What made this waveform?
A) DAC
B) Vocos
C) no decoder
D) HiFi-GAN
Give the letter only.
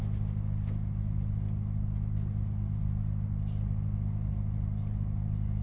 C